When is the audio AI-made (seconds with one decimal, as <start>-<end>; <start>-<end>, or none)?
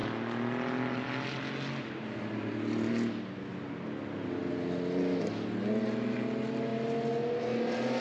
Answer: none